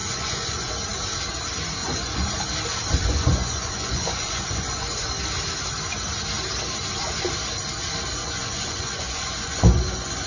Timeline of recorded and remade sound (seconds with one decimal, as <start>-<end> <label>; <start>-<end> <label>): 0.0-0.7 remade; 0.7-1.8 recorded; 1.8-2.3 remade; 2.3-3.0 recorded; 3.0-5.0 remade; 5.0-8.2 recorded; 8.2-10.3 remade